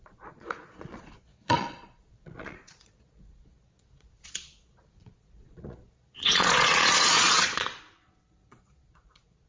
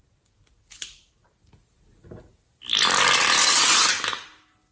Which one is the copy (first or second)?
first